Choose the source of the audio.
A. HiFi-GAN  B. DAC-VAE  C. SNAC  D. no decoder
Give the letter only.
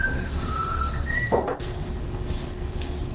C